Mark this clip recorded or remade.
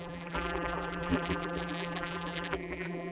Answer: remade